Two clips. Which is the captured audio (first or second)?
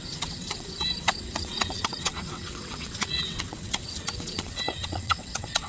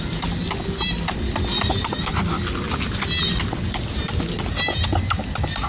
second